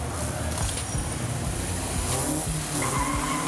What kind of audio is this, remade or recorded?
recorded